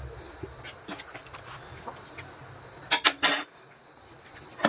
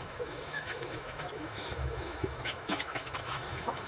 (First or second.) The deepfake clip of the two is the second